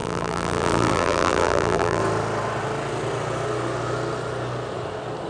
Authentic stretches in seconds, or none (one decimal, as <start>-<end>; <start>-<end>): 2.0-5.3